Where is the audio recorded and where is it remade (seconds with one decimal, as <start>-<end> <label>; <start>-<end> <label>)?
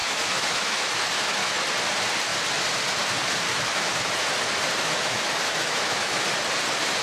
0.0-1.6 remade; 1.6-3.5 recorded; 3.5-4.3 remade; 4.3-4.8 recorded; 4.8-6.2 remade; 6.2-7.0 recorded